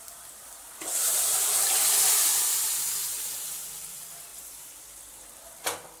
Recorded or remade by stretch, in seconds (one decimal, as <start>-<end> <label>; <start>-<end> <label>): 0.0-1.3 remade; 1.3-3.9 recorded; 3.9-6.0 remade